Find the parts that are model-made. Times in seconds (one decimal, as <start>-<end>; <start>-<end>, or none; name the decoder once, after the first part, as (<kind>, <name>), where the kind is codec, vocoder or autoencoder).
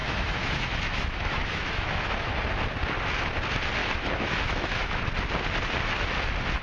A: 0.0-2.4 (autoencoder, DAC-VAE); 3.8-5.0